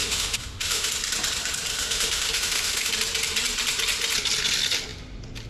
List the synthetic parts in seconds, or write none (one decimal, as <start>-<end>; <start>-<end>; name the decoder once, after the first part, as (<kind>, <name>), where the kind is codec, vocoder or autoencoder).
0.0-0.9 (autoencoder, DAC-VAE); 1.7-2.9